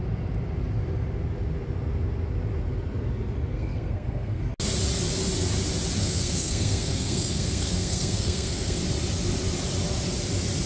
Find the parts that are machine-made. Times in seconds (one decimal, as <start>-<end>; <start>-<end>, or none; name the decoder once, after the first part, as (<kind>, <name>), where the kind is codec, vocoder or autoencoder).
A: 3.5-4.4 (codec, SNAC); 6.0-8.8